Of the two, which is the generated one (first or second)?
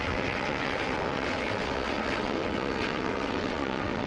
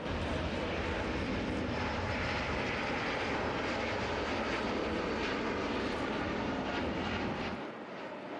first